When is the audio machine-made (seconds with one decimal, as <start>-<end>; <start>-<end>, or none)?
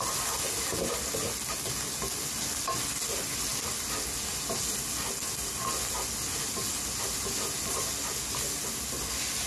none